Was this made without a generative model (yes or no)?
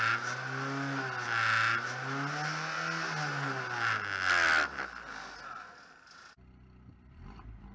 yes